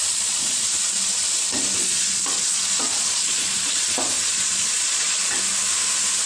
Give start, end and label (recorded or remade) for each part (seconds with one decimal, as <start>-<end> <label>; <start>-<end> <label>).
0.0-0.6 remade; 0.6-1.8 recorded; 1.8-5.3 remade; 5.3-6.3 recorded